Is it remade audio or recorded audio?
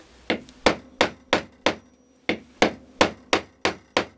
recorded